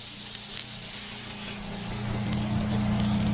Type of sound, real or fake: real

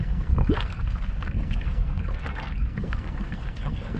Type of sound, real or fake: fake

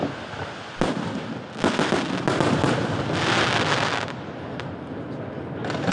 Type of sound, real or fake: real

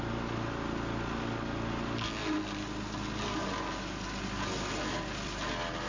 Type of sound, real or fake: real